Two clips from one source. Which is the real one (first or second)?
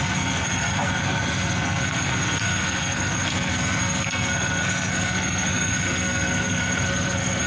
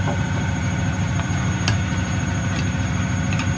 second